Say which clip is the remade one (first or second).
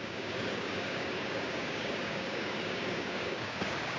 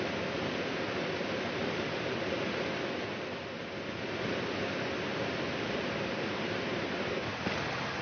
first